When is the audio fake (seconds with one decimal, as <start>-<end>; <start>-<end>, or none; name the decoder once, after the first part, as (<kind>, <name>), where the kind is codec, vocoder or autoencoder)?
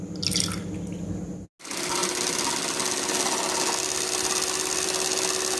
none